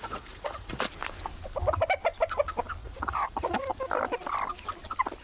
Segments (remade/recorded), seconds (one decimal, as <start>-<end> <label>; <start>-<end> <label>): 0.0-0.8 remade; 0.8-2.8 recorded; 2.8-3.6 remade; 3.6-5.2 recorded